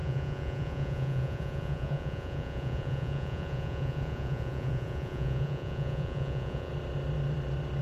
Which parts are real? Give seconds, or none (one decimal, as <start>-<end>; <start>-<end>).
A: 6.7-7.8

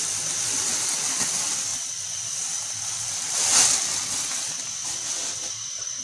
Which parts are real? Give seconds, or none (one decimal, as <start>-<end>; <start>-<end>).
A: 0.0-6.0

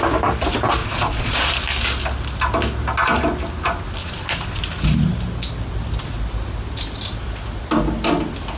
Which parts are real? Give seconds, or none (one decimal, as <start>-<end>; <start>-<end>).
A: 0.0-0.8; 1.5-4.0; 4.6-8.6